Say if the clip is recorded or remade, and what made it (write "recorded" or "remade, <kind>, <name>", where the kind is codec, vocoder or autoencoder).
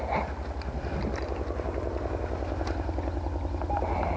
recorded